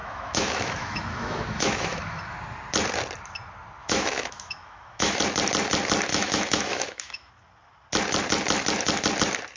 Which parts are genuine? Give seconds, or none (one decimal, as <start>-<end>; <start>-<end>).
2.2-3.8; 5.2-6.1; 7.3-9.6